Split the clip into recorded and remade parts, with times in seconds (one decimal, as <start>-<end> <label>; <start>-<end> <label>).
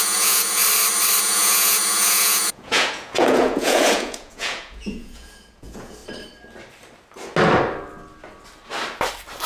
0.0-0.6 remade; 0.6-1.2 recorded; 1.2-6.0 remade; 6.0-9.5 recorded